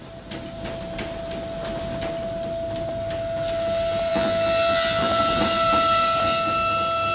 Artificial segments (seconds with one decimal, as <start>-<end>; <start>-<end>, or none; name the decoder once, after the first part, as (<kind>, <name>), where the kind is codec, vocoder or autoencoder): 4.1-5.2 (vocoder, BigVGAN v2)